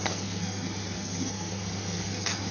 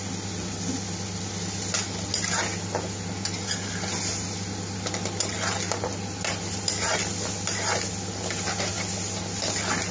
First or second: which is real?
second